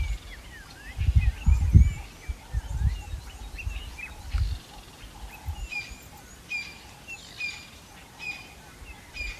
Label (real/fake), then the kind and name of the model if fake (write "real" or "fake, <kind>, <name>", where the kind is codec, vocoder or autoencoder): real